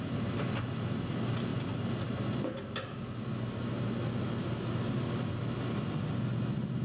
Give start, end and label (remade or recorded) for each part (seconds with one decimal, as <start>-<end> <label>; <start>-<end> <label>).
0.0-6.8 recorded